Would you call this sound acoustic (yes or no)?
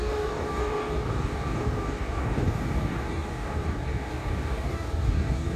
no